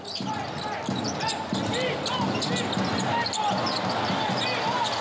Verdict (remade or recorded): recorded